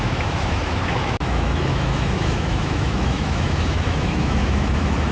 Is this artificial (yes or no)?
yes